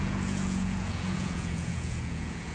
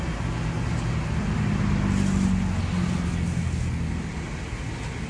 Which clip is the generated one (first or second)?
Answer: first